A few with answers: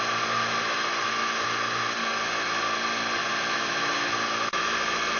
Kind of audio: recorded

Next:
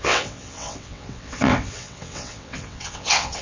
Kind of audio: remade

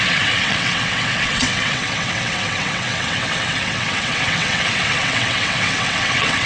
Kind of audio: remade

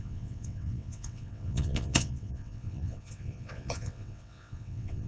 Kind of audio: remade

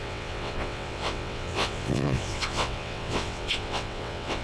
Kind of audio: remade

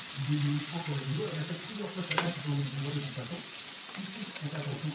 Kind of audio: remade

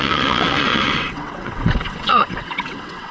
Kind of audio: remade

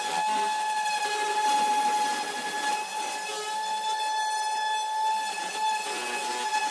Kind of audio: recorded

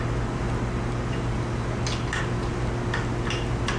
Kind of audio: recorded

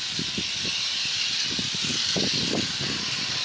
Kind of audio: recorded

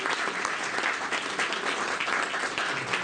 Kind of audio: recorded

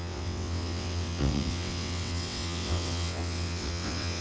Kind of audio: remade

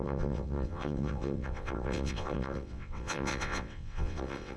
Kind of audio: remade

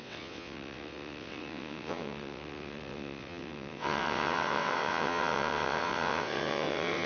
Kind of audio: remade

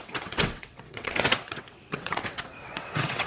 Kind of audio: remade